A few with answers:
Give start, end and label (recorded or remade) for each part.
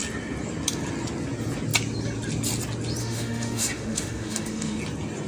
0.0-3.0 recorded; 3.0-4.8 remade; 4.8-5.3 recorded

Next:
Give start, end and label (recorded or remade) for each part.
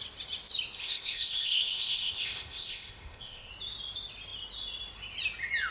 0.0-0.8 recorded; 0.8-3.5 remade; 3.5-5.7 recorded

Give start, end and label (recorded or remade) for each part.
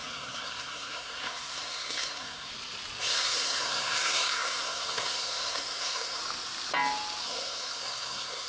0.0-2.5 remade; 2.5-3.0 recorded; 3.0-6.2 remade; 6.2-7.2 recorded; 7.2-8.5 remade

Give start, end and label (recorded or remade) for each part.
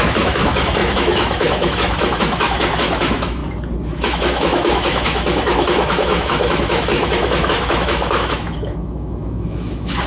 0.0-3.4 remade; 3.4-3.9 recorded; 3.9-10.1 remade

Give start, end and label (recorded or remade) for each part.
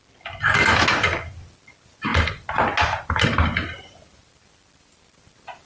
0.0-5.7 recorded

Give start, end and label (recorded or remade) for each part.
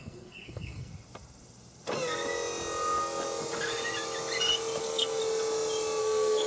0.0-0.9 remade; 0.9-4.8 recorded; 4.8-5.2 remade; 5.2-6.0 recorded; 6.0-6.5 remade